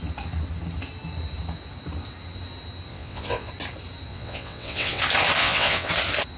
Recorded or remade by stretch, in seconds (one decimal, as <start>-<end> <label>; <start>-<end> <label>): 0.0-2.9 recorded; 2.9-3.5 remade; 3.5-4.1 recorded; 4.1-5.0 remade; 5.0-5.4 recorded; 5.4-5.9 remade; 5.9-6.4 recorded

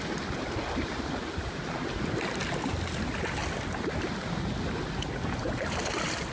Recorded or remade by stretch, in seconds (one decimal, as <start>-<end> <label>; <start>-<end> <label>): 0.0-6.3 recorded

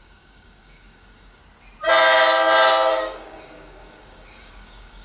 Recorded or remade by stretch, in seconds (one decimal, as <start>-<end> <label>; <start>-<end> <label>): 0.0-1.4 remade; 1.4-2.9 recorded; 2.9-5.0 remade

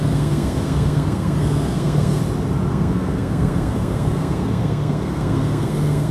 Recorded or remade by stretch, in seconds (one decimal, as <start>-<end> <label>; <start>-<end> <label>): 0.0-2.2 remade; 2.2-2.7 recorded; 2.7-6.1 remade

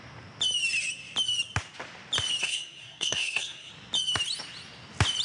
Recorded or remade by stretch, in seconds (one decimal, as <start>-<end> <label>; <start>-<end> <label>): 0.0-2.4 recorded; 2.4-3.7 remade; 3.7-5.2 recorded

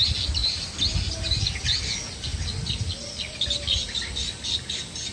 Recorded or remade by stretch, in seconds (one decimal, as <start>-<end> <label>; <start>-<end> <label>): 0.0-5.1 recorded

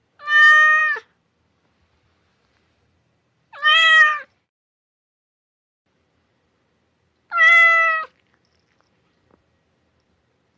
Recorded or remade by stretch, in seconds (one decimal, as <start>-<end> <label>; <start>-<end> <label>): 0.0-0.8 recorded; 0.8-1.4 remade; 1.4-2.3 recorded; 2.3-5.6 remade; 5.6-10.6 recorded